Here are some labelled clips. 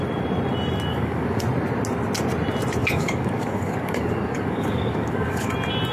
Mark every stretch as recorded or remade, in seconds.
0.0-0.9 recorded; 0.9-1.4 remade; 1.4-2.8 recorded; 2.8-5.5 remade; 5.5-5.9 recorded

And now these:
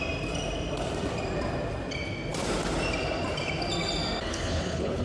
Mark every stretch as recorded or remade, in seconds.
0.0-4.3 recorded; 4.3-5.0 remade

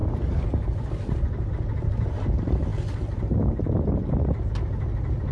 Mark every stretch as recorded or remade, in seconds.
0.0-5.3 recorded

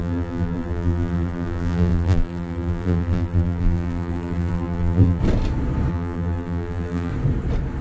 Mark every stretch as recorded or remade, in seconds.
0.0-5.2 remade; 5.2-5.9 recorded; 5.9-7.1 remade; 7.1-7.8 recorded

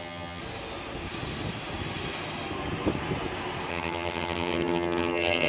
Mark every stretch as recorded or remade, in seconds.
0.0-0.4 remade; 0.4-3.7 recorded; 3.7-5.5 remade

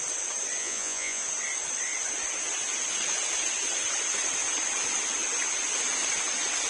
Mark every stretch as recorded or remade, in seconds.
0.0-0.6 recorded; 0.6-1.2 remade; 1.2-6.7 recorded

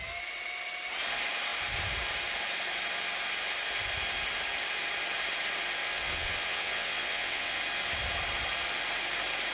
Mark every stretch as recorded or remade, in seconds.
0.0-5.8 recorded; 5.8-7.6 remade; 7.6-9.5 recorded

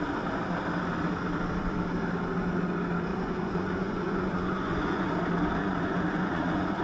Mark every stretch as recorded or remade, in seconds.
0.0-3.1 recorded; 3.1-5.1 remade; 5.1-5.6 recorded; 5.6-6.8 remade